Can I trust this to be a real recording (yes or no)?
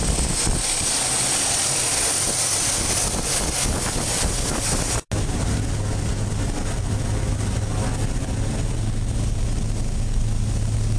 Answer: yes